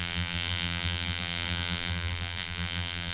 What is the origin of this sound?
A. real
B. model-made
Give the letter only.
B